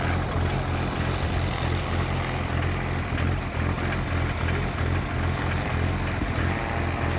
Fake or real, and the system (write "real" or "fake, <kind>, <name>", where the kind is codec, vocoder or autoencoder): real